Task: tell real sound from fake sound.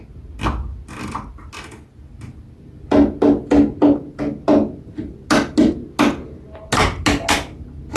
real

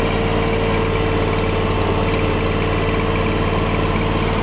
real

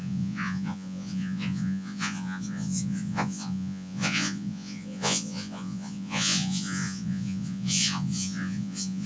fake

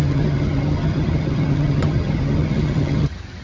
fake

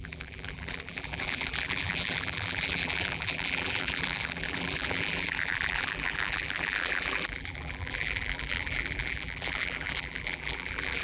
fake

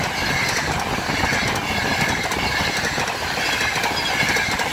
real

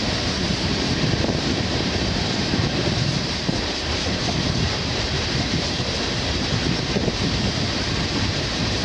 fake